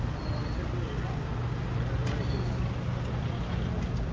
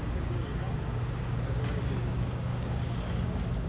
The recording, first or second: first